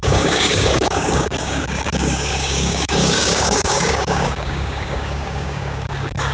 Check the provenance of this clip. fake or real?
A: fake